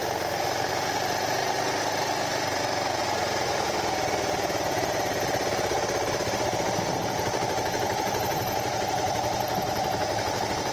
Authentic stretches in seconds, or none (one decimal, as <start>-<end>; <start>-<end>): 1.4-3.0